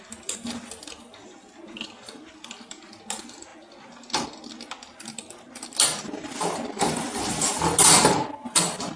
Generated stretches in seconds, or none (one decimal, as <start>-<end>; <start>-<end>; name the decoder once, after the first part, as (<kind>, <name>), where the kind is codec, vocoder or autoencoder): none